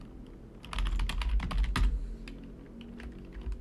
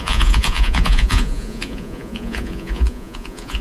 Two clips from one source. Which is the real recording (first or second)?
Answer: first